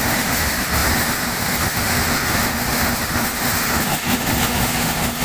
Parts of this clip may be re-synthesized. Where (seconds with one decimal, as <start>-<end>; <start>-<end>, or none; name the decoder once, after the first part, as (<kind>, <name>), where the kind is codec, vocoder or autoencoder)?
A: 0.0-5.2 (autoencoder, DAC-VAE)